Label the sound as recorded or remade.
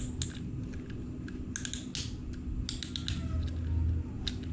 recorded